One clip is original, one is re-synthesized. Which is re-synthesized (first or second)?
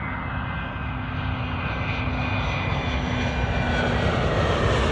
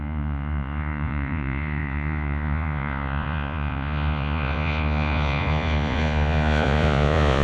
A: second